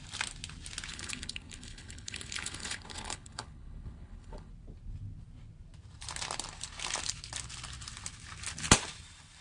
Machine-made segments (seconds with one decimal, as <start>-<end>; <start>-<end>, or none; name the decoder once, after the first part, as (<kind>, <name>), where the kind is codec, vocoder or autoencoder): 0.9-4.5 (codec, HILCodec)